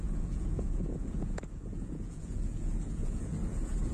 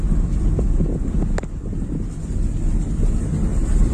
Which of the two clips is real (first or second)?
second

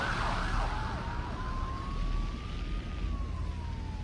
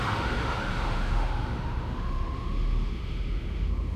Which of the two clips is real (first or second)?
first